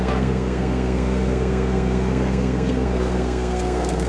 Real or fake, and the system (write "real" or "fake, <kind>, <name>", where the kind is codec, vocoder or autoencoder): fake, codec, SNAC